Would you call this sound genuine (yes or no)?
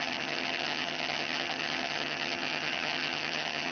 no